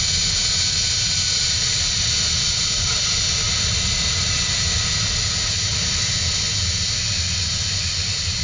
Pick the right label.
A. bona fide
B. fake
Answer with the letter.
A